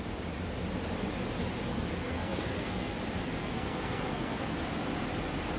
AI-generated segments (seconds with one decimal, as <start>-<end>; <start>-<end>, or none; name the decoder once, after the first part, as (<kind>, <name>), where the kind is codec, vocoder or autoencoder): 1.7-2.9 (codec, SNAC); 3.4-4.5